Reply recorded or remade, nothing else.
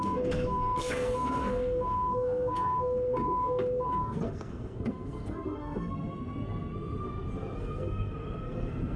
remade